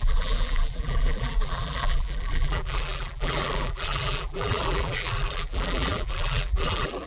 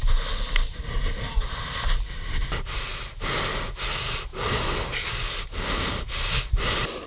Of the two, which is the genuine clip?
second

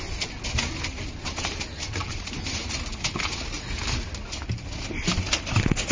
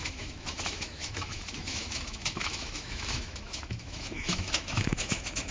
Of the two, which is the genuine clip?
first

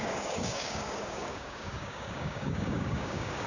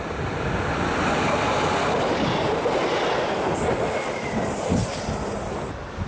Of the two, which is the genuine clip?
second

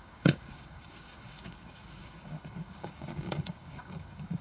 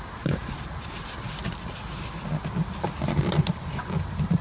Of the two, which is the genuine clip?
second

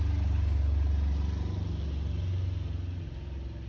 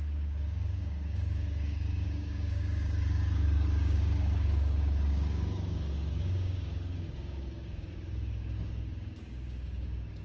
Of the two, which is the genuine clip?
first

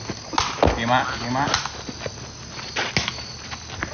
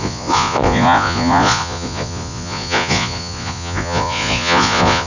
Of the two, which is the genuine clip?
first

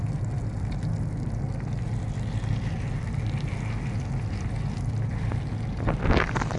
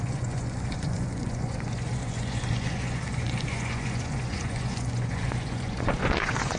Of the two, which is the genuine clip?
first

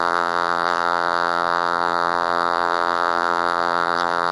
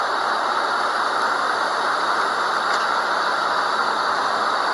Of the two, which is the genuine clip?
second